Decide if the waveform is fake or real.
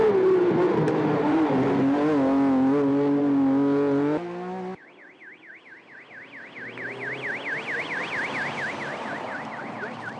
real